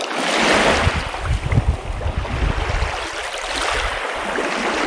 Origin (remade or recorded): recorded